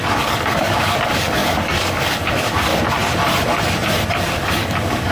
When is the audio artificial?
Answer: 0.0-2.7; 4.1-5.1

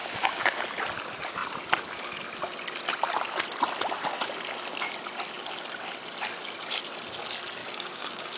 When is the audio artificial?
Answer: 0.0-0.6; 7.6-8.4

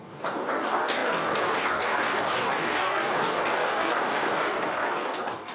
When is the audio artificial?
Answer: 0.0-5.5

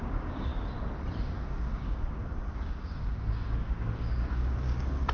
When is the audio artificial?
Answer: 0.0-0.5; 1.2-5.1

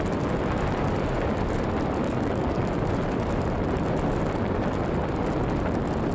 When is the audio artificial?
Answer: 2.0-2.7

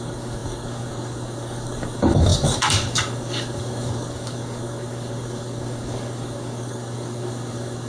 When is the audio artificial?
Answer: 0.0-7.9